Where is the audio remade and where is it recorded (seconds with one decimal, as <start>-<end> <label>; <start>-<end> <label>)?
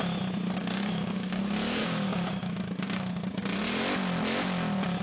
0.0-0.6 recorded; 0.6-1.4 remade; 1.4-1.8 recorded; 1.8-3.4 remade; 3.4-5.0 recorded